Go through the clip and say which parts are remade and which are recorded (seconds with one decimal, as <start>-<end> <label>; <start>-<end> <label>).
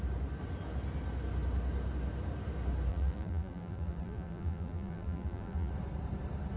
0.0-2.9 recorded; 2.9-5.7 remade; 5.7-6.6 recorded